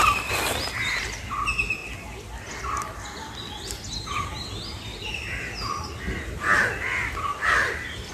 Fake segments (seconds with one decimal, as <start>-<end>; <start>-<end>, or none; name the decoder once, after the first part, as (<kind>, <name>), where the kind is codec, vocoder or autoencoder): none